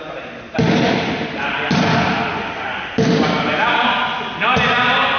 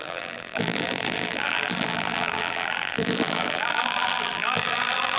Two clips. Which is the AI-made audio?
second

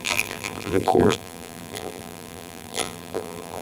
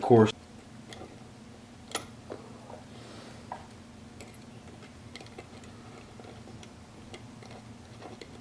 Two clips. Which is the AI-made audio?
first